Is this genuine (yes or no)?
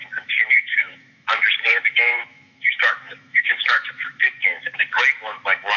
no